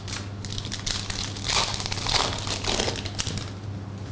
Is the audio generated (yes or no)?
no